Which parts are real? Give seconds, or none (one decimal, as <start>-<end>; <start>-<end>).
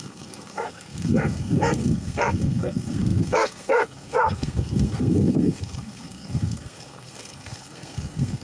none